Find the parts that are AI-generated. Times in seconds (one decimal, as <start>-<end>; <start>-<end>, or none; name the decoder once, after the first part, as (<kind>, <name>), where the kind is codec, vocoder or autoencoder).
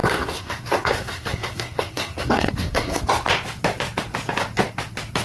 0.0-3.0 (codec, SNAC)